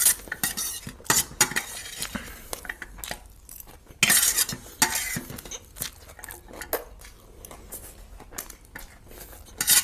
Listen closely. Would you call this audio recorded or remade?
recorded